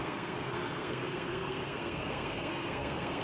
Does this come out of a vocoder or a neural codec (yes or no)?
yes